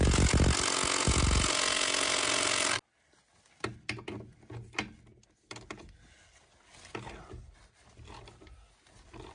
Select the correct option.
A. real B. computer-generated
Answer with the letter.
A